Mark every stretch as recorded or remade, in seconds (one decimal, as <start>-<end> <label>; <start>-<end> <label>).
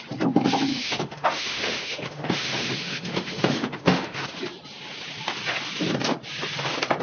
0.0-0.7 recorded; 0.7-4.4 remade; 4.4-7.0 recorded